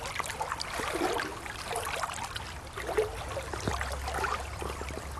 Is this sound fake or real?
real